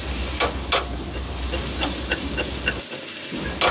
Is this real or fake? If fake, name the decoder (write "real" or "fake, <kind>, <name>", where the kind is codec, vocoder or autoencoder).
real